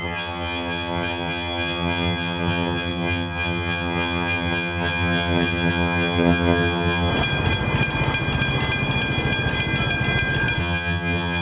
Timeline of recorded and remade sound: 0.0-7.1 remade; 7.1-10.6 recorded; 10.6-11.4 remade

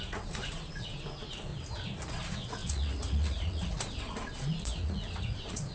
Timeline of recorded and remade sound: 0.0-1.5 remade; 1.5-2.1 recorded; 2.1-5.7 remade

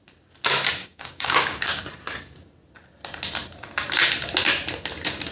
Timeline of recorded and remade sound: 0.0-0.8 recorded; 0.8-1.8 remade; 1.8-5.3 recorded

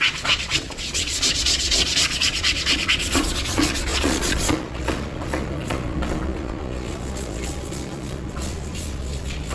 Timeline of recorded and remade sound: 0.0-9.5 remade

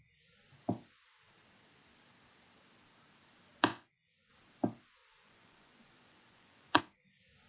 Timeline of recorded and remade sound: 0.0-3.7 recorded; 3.7-4.3 remade; 4.3-5.0 recorded; 5.0-6.8 remade; 6.8-7.5 recorded

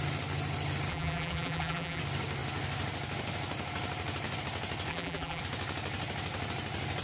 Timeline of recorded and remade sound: 0.0-0.9 recorded; 0.9-2.0 remade; 2.0-4.9 recorded; 4.9-5.4 remade; 5.4-7.0 recorded

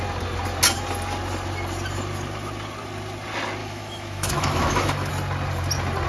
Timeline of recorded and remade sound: 0.0-3.6 recorded; 3.6-5.1 remade; 5.1-6.1 recorded